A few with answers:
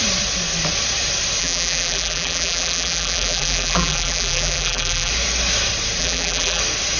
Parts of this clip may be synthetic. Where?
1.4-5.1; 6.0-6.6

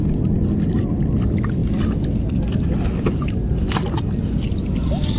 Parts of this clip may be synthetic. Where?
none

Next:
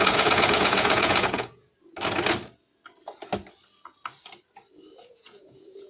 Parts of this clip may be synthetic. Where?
0.0-1.7; 5.0-5.9

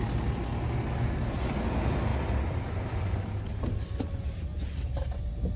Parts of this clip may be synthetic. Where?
2.1-3.1

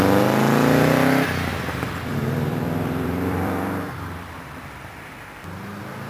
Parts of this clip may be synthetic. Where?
1.5-4.4

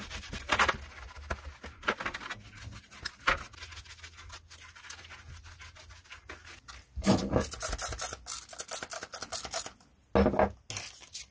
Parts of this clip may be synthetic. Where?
none